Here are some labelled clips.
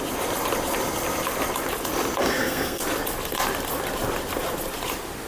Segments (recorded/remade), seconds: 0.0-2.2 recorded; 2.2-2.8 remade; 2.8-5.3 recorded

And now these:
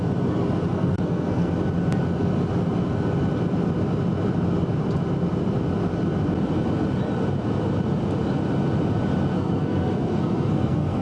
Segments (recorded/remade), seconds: 0.0-0.7 recorded; 0.7-1.5 remade; 1.5-9.3 recorded; 9.3-11.0 remade

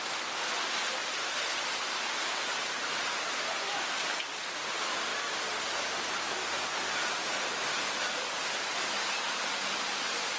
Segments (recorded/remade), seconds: 0.0-10.4 recorded

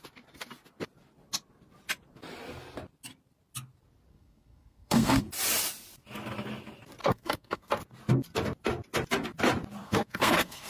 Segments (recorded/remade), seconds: 0.0-4.1 recorded; 4.1-5.2 remade; 5.2-7.0 recorded; 7.0-7.7 remade; 7.7-9.8 recorded; 9.8-10.7 remade